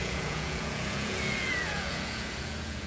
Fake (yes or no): yes